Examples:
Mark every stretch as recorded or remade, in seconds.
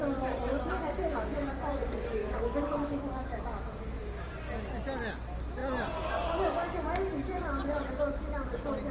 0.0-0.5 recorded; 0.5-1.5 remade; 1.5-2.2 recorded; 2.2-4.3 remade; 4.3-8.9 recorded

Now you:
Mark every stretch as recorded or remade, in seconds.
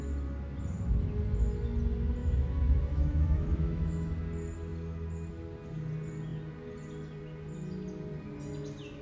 0.0-2.2 recorded; 2.2-4.1 remade; 4.1-9.0 recorded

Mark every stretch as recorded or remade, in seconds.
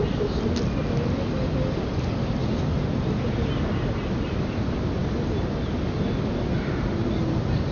0.0-7.7 recorded